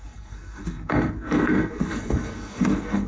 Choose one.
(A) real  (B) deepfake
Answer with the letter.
B